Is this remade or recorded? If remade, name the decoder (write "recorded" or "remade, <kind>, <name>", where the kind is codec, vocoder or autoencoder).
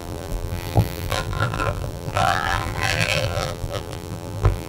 remade, vocoder, BigVGAN v2